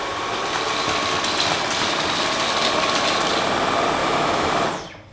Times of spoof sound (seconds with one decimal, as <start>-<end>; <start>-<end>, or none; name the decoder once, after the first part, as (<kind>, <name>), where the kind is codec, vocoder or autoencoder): 4.0-4.5 (autoencoder, DAC-VAE)